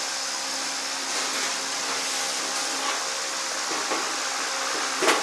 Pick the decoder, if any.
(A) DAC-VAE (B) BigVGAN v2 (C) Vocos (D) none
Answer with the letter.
D